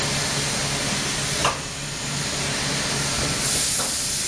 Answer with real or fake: real